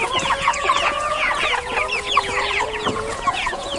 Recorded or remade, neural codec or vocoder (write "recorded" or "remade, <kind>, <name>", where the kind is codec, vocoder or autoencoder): remade, vocoder, Vocos